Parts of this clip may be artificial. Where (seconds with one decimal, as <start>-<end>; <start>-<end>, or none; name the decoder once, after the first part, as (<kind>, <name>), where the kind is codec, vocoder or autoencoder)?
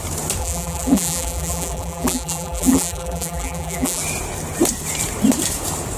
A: 0.4-4.0 (vocoder, BigVGAN v2)